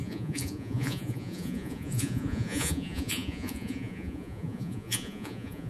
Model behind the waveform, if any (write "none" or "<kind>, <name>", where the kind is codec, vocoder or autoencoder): vocoder, Vocos